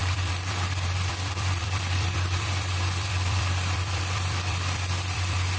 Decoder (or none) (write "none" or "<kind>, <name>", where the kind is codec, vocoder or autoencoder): vocoder, BigVGAN v2